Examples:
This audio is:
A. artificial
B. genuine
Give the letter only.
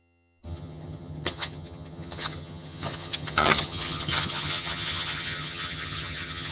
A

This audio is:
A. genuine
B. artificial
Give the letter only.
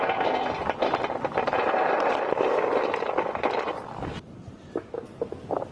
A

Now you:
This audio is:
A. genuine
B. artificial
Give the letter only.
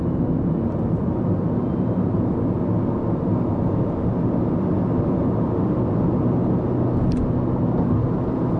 A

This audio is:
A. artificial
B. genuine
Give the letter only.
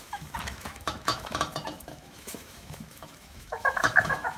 A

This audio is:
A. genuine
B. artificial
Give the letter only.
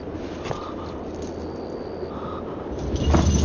A